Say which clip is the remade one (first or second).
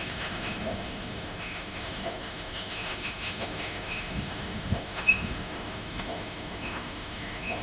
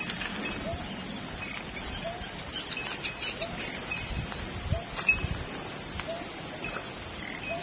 first